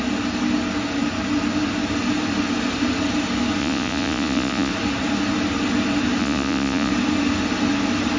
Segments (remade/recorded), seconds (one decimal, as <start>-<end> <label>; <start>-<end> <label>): 0.0-3.6 recorded; 3.6-4.7 remade; 4.7-6.2 recorded; 6.2-6.9 remade; 6.9-8.2 recorded